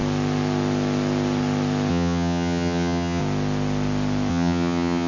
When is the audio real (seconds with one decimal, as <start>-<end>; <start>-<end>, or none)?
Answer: 0.0-1.9; 3.2-4.3